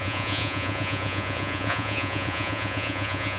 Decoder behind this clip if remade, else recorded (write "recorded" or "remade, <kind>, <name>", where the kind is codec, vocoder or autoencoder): remade, vocoder, Vocos